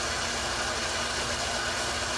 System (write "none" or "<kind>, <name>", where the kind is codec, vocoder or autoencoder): none